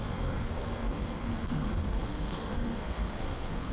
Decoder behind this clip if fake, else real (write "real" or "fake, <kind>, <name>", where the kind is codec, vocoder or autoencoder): fake, codec, SNAC